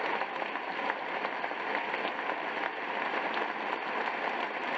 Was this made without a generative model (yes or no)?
no